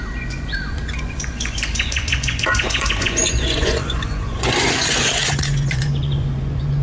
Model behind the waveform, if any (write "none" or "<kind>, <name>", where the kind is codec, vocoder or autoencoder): vocoder, Vocos